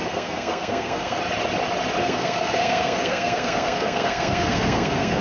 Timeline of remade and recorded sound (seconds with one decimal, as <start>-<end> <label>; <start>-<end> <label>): 0.0-1.2 remade; 1.2-2.0 recorded; 2.0-5.2 remade